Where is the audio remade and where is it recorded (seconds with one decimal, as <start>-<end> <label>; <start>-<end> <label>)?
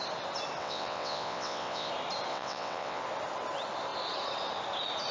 0.0-0.6 recorded; 0.6-1.9 remade; 1.9-2.3 recorded; 2.3-3.0 remade; 3.0-5.1 recorded